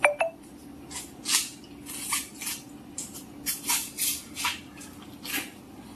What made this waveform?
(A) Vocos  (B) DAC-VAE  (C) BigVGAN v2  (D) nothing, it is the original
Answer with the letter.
D